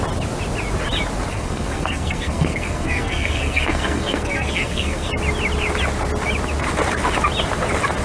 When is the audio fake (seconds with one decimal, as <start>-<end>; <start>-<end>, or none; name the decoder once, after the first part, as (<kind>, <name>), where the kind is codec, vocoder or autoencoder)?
1.3-5.1 (codec, SNAC)